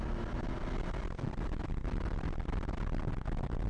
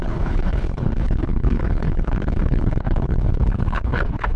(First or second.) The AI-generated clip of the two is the second